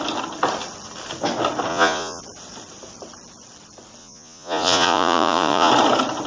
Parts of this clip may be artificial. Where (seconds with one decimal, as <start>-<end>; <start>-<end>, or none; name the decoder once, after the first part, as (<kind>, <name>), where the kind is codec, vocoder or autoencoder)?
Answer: 1.7-2.2 (vocoder, Vocos); 4.0-5.7

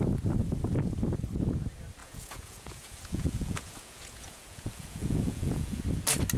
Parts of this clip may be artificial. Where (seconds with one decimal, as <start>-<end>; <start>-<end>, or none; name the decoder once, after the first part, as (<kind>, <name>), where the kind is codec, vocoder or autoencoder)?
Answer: 2.0-5.8 (vocoder, Vocos)

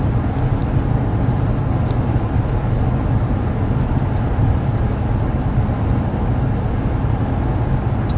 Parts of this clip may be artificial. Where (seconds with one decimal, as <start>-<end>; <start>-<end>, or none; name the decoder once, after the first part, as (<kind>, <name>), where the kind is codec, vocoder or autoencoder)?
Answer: none

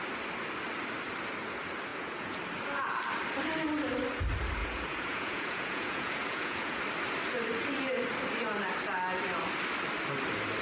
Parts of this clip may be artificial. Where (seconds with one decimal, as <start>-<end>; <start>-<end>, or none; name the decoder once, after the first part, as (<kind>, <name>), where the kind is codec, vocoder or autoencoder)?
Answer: 1.9-2.4 (vocoder, Vocos); 4.6-6.8